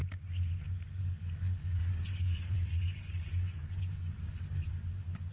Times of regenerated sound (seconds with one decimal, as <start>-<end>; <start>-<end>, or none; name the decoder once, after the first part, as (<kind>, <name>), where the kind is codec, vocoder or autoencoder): 1.0-5.3 (codec, DAC)